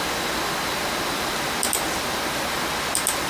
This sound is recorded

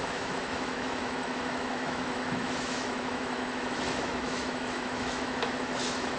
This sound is remade